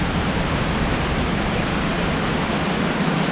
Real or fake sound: real